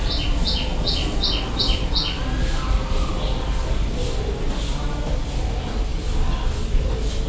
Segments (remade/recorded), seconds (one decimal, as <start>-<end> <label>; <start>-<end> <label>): 0.0-7.3 recorded